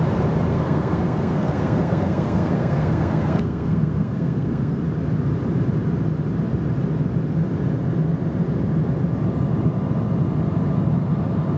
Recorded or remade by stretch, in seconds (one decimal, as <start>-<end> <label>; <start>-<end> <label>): 0.0-0.5 recorded; 0.5-4.8 remade; 4.8-11.6 recorded

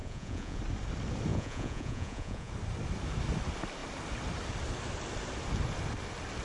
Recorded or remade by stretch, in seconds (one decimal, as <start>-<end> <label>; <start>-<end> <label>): 0.0-0.6 remade; 0.6-1.3 recorded; 1.3-2.5 remade; 2.5-6.4 recorded

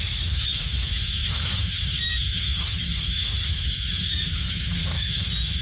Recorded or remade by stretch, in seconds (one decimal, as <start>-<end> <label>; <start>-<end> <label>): 0.0-5.6 remade

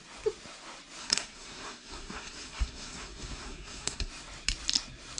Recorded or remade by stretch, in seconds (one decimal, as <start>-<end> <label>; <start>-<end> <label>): 0.0-1.0 recorded; 1.0-4.1 remade; 4.1-5.2 recorded

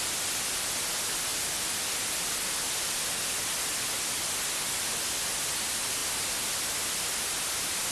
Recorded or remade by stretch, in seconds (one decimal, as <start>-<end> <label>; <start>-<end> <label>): 0.0-7.9 recorded

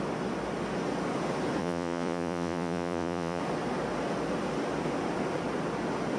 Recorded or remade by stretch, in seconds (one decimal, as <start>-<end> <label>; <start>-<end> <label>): 0.0-1.6 recorded; 1.6-3.4 remade; 3.4-6.2 recorded

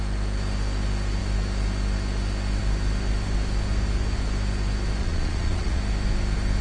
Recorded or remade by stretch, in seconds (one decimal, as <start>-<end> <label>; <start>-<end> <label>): 0.0-5.0 recorded; 5.0-5.8 remade; 5.8-6.6 recorded